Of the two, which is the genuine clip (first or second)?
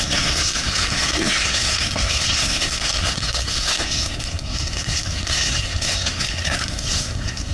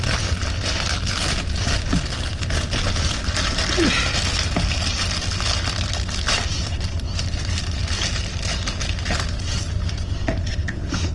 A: second